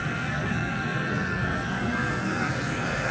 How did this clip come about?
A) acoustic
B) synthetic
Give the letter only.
B